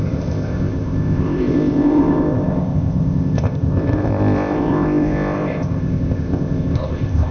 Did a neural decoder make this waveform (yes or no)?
yes